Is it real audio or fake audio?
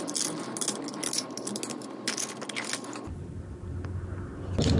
real